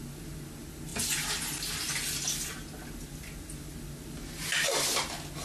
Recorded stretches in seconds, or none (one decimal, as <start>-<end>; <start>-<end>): 0.0-5.4